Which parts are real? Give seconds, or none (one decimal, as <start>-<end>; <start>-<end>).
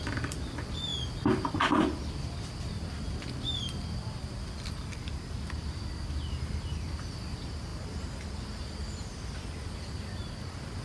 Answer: 0.0-10.8